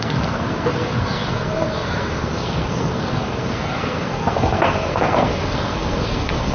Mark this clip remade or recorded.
remade